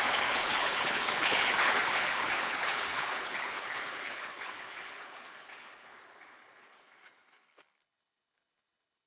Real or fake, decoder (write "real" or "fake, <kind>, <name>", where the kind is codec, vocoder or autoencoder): fake, codec, HILCodec